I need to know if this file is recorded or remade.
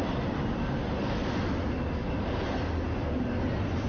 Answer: recorded